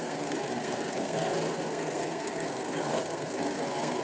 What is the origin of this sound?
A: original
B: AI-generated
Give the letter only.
B